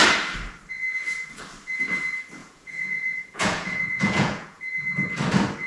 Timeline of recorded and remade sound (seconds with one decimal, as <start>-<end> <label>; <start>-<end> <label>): 0.0-2.4 recorded; 2.4-4.6 remade; 4.6-5.7 recorded